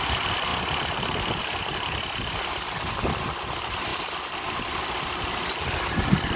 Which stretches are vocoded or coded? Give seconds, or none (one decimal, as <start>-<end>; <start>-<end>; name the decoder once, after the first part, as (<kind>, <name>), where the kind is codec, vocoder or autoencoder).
0.0-6.4 (vocoder, BigVGAN v2)

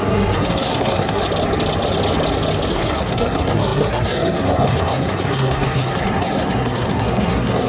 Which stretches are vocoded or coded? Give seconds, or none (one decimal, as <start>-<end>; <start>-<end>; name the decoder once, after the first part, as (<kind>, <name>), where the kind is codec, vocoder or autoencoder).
0.0-1.2 (codec, SNAC); 2.7-7.7

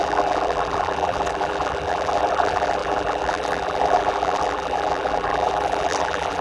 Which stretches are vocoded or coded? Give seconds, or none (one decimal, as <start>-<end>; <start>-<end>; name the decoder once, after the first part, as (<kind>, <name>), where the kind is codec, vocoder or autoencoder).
0.0-6.4 (vocoder, BigVGAN v2)

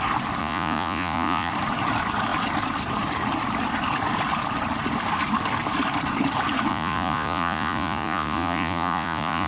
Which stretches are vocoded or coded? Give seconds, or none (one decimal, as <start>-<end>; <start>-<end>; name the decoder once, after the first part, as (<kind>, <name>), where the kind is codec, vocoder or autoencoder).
0.4-1.5 (vocoder, Vocos); 6.7-9.5

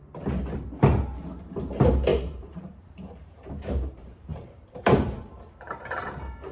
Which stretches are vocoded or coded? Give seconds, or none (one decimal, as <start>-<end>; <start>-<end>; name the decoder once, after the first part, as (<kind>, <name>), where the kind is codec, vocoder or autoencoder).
0.8-6.5 (vocoder, BigVGAN v2)

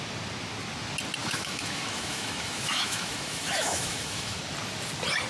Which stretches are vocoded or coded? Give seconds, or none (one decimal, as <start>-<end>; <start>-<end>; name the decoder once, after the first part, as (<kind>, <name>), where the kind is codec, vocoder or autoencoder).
1.2-4.4 (autoencoder, DAC-VAE)